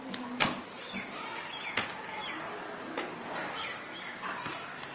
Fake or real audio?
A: real